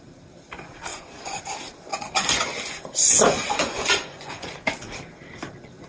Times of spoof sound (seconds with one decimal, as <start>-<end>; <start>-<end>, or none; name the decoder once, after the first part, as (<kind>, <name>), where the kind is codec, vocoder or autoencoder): 0.9-1.4 (vocoder, Vocos); 1.9-4.5

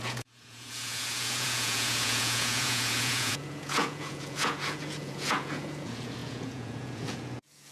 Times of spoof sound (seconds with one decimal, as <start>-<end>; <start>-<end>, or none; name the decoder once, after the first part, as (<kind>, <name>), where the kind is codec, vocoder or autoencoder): 0.0-7.7 (vocoder, Vocos)

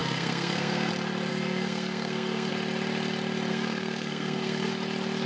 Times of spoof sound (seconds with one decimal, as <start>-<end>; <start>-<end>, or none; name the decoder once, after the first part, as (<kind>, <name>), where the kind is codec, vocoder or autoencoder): 0.0-0.9 (codec, SNAC); 1.3-2.5; 3.5-4.7

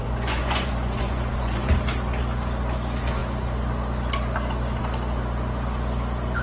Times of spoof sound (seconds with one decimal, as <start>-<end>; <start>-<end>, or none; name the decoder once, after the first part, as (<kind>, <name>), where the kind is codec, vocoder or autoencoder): 0.0-1.7 (vocoder, Vocos)

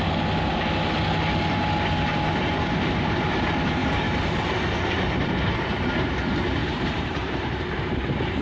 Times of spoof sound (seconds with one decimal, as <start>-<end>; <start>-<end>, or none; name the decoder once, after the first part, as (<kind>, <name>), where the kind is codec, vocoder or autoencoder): 3.8-4.7 (vocoder, BigVGAN v2); 6.6-7.6